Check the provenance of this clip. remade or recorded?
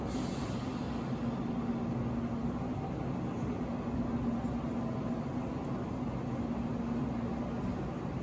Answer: recorded